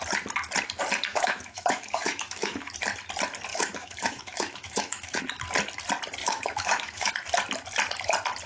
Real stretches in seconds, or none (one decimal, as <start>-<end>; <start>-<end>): 0.0-1.1; 2.7-3.5; 5.2-6.2; 7.1-8.5